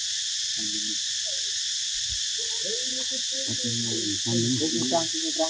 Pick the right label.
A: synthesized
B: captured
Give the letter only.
B